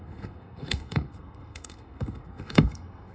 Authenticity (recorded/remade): remade